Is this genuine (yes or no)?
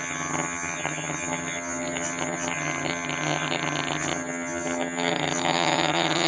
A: no